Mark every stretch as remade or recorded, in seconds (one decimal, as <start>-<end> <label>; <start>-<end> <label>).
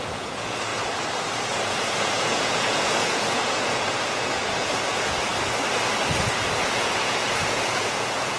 0.0-0.7 remade; 0.7-1.5 recorded; 1.5-5.3 remade; 5.3-6.2 recorded; 6.2-8.4 remade